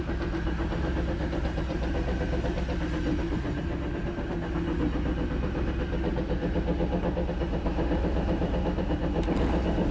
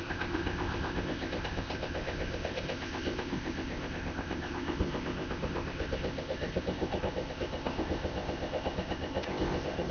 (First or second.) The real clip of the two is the first